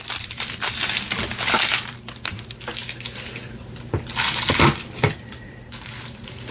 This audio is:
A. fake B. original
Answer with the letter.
B